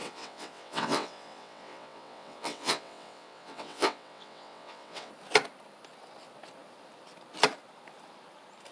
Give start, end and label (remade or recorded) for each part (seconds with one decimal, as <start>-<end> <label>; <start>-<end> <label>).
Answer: 0.0-5.1 remade; 5.1-8.7 recorded